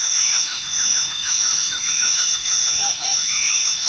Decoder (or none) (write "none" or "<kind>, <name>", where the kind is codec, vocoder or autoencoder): autoencoder, DAC-VAE